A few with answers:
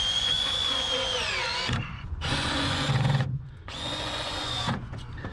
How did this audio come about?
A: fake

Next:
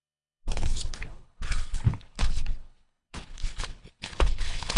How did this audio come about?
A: fake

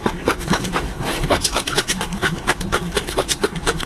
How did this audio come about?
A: fake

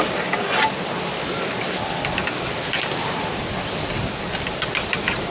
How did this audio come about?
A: real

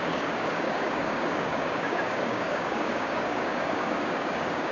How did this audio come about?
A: fake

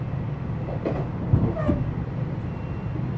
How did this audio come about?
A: real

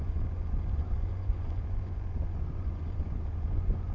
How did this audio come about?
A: fake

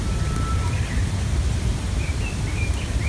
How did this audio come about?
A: real